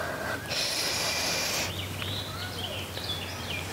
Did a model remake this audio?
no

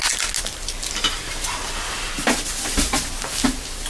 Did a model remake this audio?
no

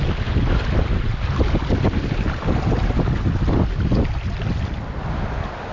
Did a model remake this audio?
no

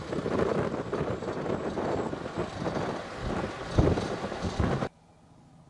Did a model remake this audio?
no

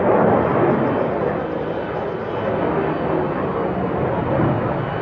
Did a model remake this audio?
no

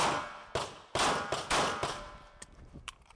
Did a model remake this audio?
no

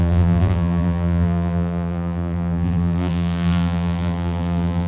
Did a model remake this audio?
yes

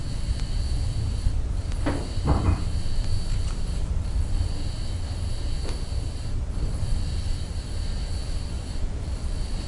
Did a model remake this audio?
yes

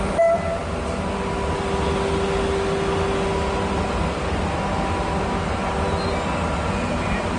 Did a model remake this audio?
no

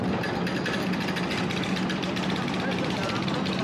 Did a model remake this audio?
no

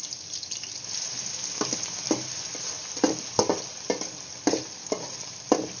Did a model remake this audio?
no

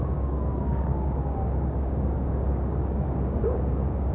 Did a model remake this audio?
yes